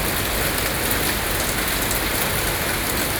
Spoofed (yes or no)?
no